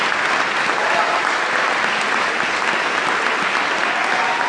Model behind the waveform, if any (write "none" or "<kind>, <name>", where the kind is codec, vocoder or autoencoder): none